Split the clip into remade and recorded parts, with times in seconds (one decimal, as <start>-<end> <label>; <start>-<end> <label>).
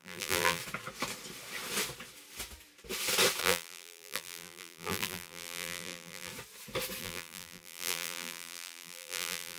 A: 0.0-0.6 remade; 0.6-3.4 recorded; 3.4-6.3 remade; 6.3-7.0 recorded; 7.0-9.6 remade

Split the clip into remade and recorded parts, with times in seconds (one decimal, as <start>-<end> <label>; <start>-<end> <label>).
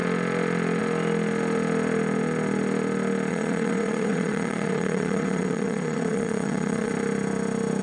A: 0.0-3.3 recorded; 3.3-6.9 remade; 6.9-7.8 recorded